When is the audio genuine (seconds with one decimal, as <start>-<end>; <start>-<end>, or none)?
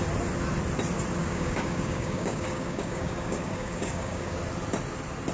0.0-1.2; 4.4-5.3